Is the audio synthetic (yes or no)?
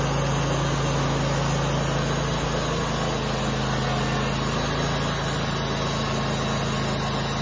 no